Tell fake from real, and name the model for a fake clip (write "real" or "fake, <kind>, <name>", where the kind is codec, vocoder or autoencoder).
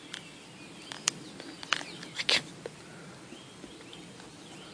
real